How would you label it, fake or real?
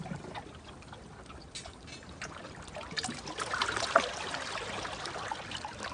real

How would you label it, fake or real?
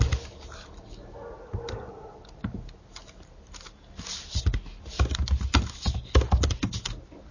real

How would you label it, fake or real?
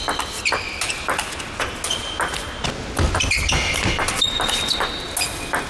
real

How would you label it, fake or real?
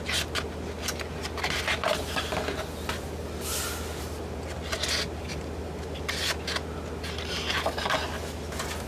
real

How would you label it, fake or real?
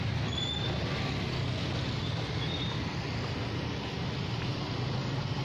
real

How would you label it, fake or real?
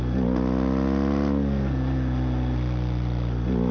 real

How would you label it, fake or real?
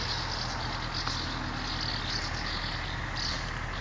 real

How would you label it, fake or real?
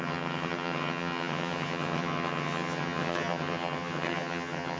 fake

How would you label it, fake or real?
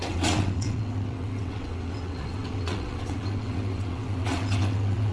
fake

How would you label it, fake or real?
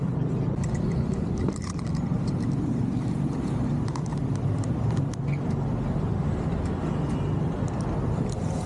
fake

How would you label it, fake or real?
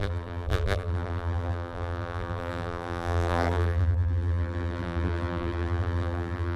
fake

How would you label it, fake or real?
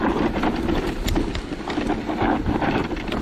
real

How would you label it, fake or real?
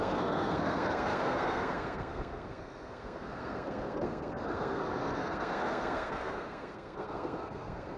fake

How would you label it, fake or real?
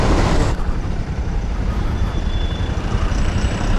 fake